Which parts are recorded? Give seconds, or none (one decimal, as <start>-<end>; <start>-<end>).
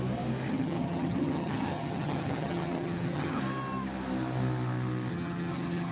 0.0-0.5; 3.4-5.1